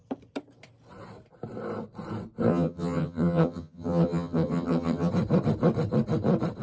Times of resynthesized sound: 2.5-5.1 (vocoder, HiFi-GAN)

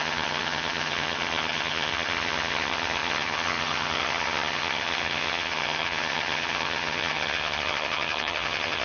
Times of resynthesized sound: 0.0-8.8 (vocoder, HiFi-GAN)